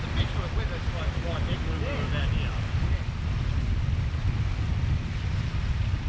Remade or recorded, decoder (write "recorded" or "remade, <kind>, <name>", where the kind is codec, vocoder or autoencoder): recorded